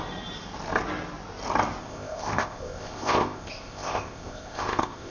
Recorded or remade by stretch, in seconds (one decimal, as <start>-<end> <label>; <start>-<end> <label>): 0.0-1.8 recorded; 1.8-5.1 remade